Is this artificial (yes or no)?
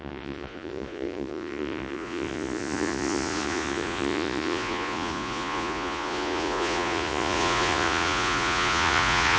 yes